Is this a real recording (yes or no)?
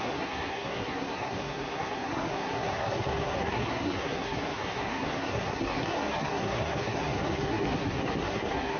no